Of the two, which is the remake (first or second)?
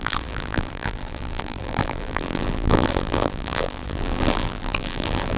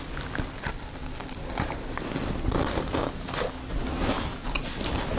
first